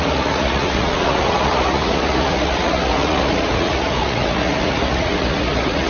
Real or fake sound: fake